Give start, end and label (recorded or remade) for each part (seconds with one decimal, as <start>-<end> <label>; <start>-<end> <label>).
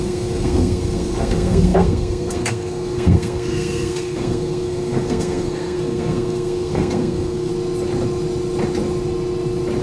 0.0-7.5 remade; 7.5-9.8 recorded